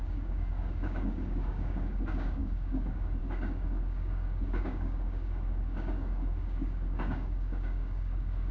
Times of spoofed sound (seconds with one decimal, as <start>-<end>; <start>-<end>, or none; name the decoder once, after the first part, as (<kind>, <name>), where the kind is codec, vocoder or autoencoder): 0.0-8.5 (codec, DAC)